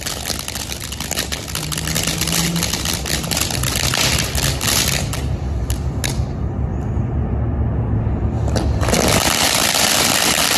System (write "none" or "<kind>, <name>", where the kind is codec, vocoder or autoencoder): none